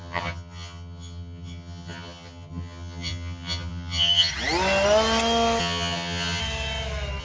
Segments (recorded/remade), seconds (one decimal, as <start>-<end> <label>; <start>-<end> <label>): 0.0-4.3 remade; 4.3-5.6 recorded; 5.6-6.4 remade; 6.4-7.2 recorded